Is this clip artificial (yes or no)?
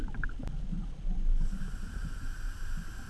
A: no